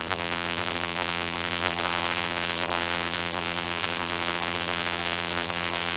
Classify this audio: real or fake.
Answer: fake